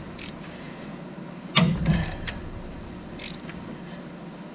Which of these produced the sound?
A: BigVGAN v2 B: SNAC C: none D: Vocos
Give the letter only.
C